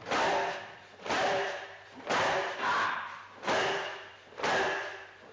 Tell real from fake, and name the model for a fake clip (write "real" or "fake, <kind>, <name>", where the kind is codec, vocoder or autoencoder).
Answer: fake, vocoder, BigVGAN v2